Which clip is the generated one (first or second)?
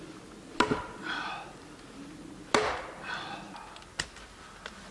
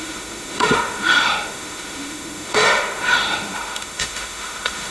second